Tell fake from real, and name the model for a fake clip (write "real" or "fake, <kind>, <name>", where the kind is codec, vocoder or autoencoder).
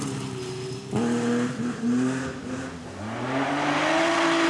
real